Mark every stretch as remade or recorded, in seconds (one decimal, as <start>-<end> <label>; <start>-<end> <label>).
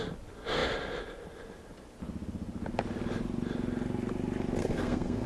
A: 0.0-4.6 recorded; 4.6-5.3 remade